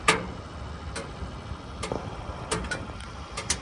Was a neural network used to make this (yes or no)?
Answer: no